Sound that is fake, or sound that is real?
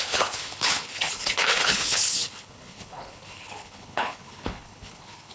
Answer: fake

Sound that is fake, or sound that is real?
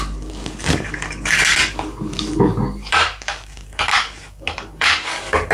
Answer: fake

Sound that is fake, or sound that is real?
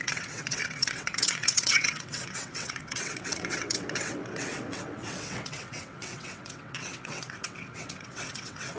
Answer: fake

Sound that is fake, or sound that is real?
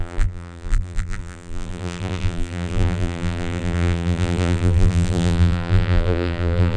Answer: fake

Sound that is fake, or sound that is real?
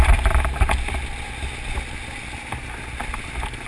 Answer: real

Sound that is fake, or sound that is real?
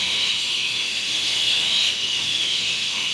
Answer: fake